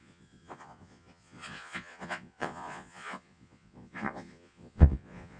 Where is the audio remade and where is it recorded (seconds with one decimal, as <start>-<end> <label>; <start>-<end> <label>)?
0.0-5.4 remade